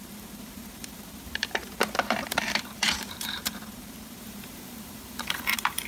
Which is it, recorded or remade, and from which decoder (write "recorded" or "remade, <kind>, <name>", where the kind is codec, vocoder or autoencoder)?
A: remade, vocoder, BigVGAN v2